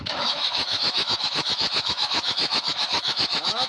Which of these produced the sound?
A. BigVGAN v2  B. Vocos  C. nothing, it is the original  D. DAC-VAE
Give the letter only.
D